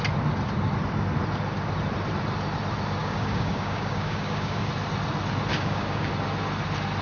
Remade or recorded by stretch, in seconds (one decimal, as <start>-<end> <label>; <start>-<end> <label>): 0.0-3.0 recorded; 3.0-4.7 remade; 4.7-5.5 recorded; 5.5-6.1 remade; 6.1-7.0 recorded